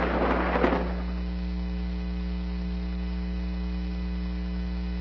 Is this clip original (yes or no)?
yes